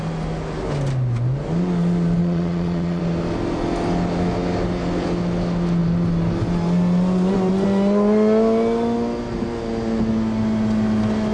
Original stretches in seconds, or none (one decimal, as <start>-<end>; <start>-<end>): 0.0-2.2; 3.0-11.3